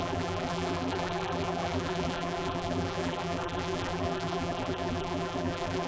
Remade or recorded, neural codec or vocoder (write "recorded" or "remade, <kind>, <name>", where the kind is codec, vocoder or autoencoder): remade, vocoder, BigVGAN v2